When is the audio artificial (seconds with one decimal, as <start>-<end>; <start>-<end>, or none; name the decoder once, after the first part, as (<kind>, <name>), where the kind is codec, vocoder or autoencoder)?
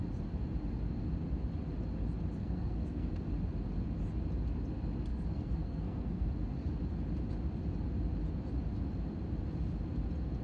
2.4-3.1 (codec, SNAC); 5.1-6.3